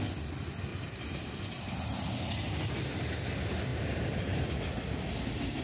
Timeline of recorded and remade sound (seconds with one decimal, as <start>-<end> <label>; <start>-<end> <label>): 0.0-0.7 recorded; 0.7-1.3 remade; 1.3-3.7 recorded; 3.7-4.6 remade; 4.6-5.6 recorded

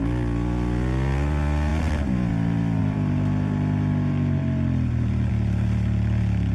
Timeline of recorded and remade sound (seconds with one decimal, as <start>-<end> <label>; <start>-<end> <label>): 0.0-2.8 recorded; 2.8-5.3 remade; 5.3-6.5 recorded

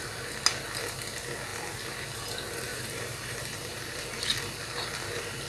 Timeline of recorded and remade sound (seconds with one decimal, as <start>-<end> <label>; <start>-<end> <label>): 0.0-2.7 recorded; 2.7-4.0 remade; 4.0-5.5 recorded

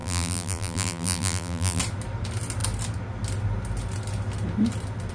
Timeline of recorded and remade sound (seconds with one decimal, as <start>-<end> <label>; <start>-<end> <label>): 0.0-1.8 remade; 1.8-5.1 recorded

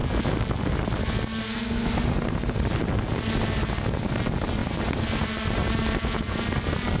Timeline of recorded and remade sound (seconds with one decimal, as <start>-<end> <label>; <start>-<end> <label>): 0.0-4.6 recorded; 4.6-7.0 remade